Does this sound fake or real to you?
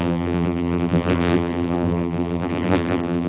fake